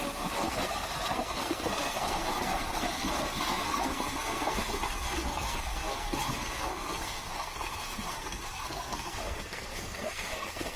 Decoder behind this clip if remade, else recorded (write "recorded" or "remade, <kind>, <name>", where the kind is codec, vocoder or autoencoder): remade, codec, SNAC